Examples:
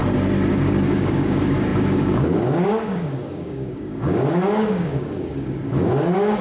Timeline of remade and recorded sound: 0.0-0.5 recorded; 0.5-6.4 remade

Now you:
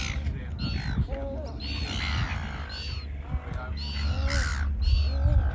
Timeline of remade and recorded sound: 0.0-5.5 recorded

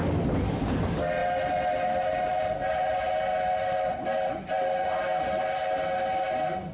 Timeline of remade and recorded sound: 0.0-6.7 recorded

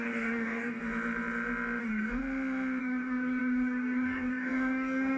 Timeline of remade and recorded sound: 0.0-0.8 remade; 0.8-1.8 recorded; 1.8-2.2 remade; 2.2-2.8 recorded; 2.8-5.2 remade

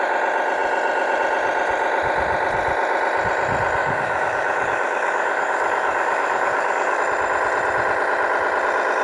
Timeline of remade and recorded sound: 0.0-3.8 recorded; 3.8-7.0 remade; 7.0-9.0 recorded

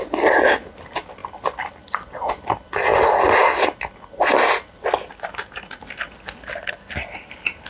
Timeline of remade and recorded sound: 0.0-7.7 recorded